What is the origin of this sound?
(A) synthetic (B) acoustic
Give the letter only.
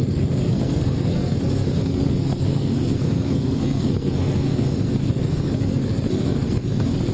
A